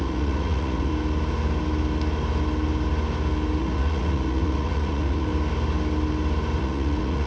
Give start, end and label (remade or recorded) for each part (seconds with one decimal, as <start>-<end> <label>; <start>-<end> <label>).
0.0-0.9 remade; 0.9-3.6 recorded; 3.6-5.3 remade; 5.3-6.6 recorded; 6.6-7.3 remade